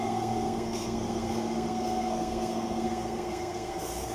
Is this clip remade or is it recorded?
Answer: remade